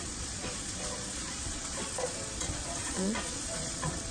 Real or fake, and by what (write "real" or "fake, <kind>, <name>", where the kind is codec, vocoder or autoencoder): fake, vocoder, Vocos